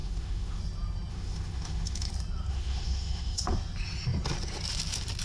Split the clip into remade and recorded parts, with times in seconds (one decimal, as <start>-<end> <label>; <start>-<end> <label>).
0.0-0.6 remade; 0.6-1.1 recorded; 1.1-2.1 remade; 2.1-2.5 recorded; 2.5-3.4 remade; 3.4-5.2 recorded